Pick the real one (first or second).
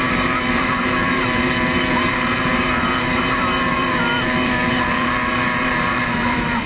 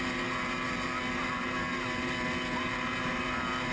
second